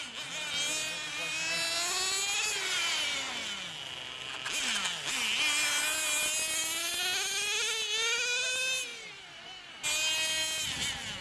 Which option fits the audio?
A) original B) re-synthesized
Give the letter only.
A